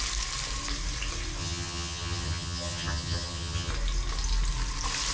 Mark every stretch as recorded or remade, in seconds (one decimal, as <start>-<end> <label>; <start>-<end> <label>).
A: 0.0-1.4 recorded; 1.4-3.7 remade; 3.7-5.1 recorded